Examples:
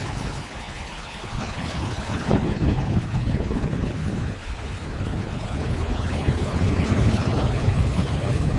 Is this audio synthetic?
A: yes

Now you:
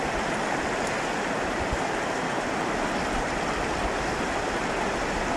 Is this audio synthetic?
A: no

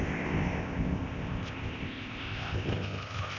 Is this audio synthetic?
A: yes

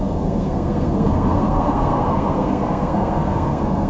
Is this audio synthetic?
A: yes